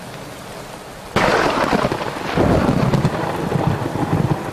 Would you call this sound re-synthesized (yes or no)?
no